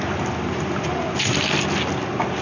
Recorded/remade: recorded